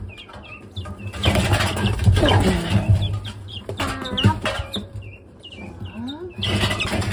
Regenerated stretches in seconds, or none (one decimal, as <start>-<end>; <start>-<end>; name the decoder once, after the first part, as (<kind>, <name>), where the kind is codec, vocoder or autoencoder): 1.2-5.5 (vocoder, BigVGAN v2)